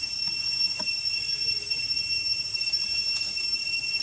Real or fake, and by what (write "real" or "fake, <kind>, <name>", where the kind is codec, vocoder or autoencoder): real